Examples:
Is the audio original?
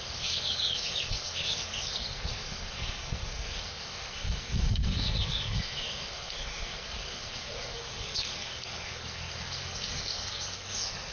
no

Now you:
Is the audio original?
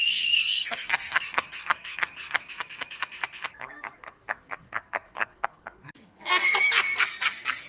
no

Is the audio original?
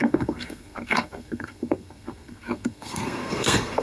no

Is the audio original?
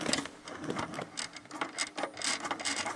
yes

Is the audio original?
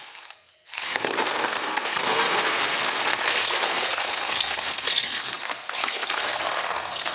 no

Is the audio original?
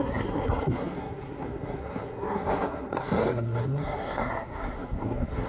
no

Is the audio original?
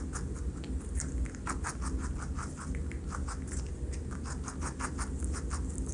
yes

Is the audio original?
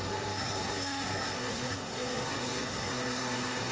no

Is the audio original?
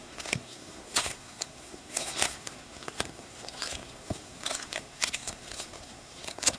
no